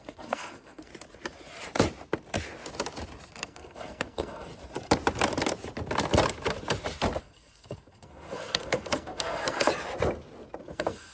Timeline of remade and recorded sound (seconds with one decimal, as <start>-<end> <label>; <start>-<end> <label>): 0.0-0.9 remade; 0.9-3.3 recorded; 3.3-4.5 remade; 4.5-7.2 recorded; 7.2-9.7 remade; 9.7-10.6 recorded; 10.6-11.1 remade